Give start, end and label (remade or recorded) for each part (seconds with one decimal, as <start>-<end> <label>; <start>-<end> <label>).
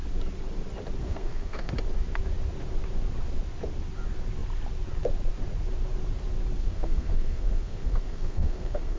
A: 0.0-1.0 recorded; 1.0-1.7 remade; 1.7-6.6 recorded; 6.6-9.0 remade